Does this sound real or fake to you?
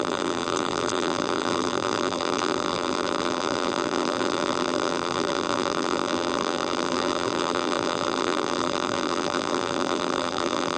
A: fake